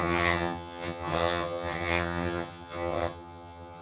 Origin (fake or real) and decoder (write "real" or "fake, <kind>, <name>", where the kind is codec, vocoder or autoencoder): fake, vocoder, HiFi-GAN